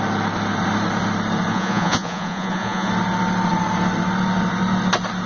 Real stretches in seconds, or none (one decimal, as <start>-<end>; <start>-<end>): 0.0-1.5; 2.9-5.3